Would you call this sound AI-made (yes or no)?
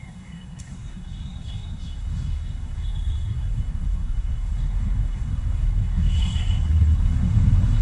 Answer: yes